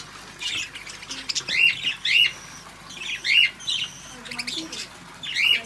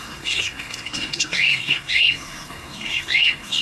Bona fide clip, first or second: first